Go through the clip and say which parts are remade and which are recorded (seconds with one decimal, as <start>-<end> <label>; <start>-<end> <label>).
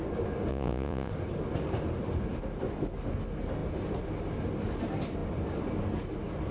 0.0-0.5 recorded; 0.5-1.1 remade; 1.1-6.5 recorded